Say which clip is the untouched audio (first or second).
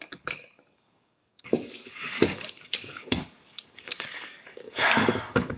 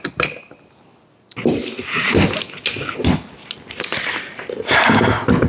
second